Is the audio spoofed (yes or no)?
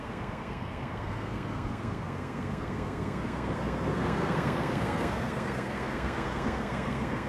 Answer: yes